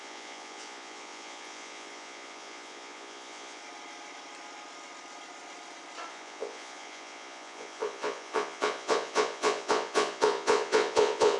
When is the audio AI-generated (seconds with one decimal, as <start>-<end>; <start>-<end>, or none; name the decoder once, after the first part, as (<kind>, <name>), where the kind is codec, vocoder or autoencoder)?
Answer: 0.0-3.6 (vocoder, Vocos); 6.1-11.4